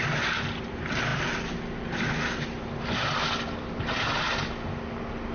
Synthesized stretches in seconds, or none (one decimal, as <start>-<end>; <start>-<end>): 1.1-2.1